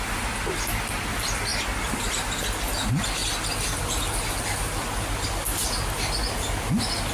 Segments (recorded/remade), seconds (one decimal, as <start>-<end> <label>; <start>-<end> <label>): 0.0-7.1 recorded